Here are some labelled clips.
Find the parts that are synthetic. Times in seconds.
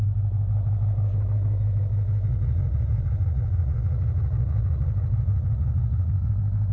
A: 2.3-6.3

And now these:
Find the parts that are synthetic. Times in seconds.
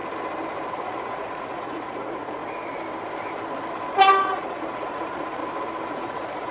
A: 0.7-2.4; 4.2-5.4; 5.9-6.5